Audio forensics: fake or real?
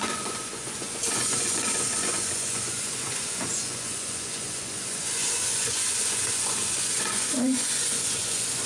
fake